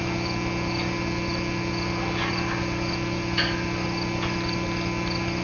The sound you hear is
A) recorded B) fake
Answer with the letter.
A